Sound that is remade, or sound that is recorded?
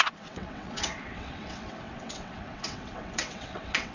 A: remade